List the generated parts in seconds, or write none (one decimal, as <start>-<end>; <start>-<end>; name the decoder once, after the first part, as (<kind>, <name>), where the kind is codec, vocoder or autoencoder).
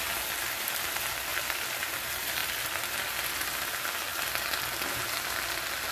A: none